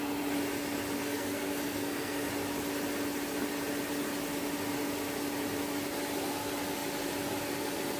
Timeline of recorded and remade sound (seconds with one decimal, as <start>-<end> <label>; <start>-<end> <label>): 0.0-1.0 recorded; 1.0-2.3 remade; 2.3-8.0 recorded